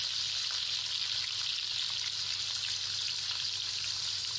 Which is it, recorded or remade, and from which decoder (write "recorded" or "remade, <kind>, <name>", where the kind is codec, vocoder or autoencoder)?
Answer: recorded